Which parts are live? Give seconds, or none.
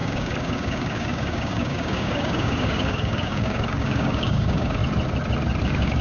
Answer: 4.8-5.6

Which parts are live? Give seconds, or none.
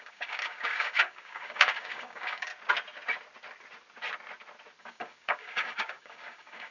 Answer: 2.5-4.8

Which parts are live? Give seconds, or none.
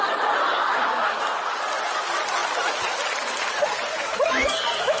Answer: 0.0-0.5; 1.2-3.9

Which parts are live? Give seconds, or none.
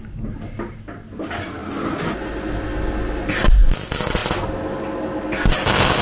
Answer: 0.0-6.0